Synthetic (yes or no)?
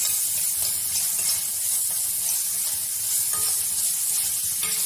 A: no